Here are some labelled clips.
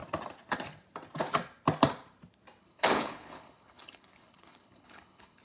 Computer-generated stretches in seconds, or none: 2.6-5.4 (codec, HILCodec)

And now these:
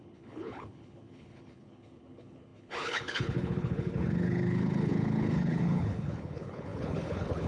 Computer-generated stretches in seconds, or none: 0.0-7.5 (codec, HILCodec)

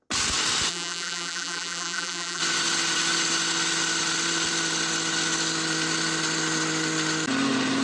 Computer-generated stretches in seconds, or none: 0.7-2.4 (vocoder, BigVGAN v2)

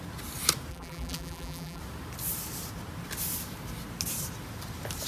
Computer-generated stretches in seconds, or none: 0.7-1.8 (vocoder, BigVGAN v2)

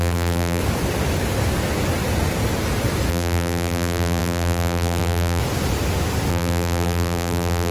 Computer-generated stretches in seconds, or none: 0.0-0.6 (vocoder, BigVGAN v2); 3.1-5.4; 6.3-7.7

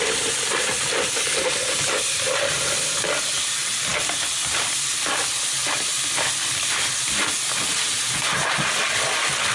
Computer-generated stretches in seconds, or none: none